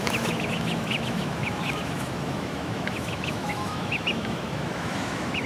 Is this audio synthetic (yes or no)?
yes